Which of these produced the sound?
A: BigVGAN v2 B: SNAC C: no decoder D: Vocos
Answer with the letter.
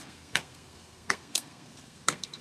B